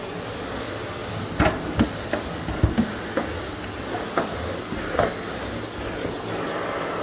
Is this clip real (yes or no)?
yes